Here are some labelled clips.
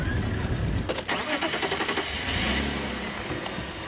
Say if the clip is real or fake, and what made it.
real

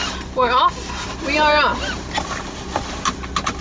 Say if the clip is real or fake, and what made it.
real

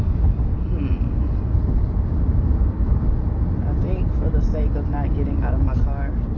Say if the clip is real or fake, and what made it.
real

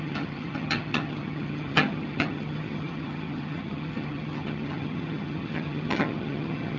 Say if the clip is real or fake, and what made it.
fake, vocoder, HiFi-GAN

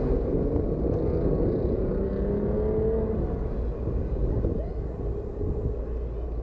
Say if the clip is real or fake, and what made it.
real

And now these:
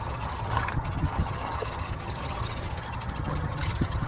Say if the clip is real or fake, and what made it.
fake, vocoder, HiFi-GAN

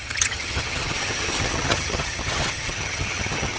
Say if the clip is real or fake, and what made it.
fake, vocoder, HiFi-GAN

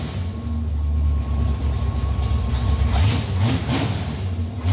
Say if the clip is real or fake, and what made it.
real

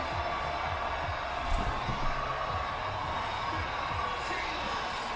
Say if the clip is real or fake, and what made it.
real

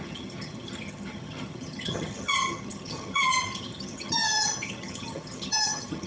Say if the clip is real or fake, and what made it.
fake, vocoder, HiFi-GAN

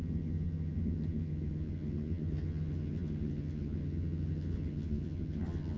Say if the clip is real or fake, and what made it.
fake, vocoder, HiFi-GAN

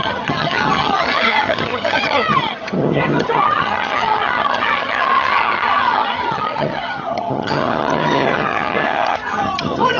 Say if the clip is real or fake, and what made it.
fake, vocoder, HiFi-GAN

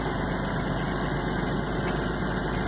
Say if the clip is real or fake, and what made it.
real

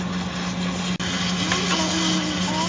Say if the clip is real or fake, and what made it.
real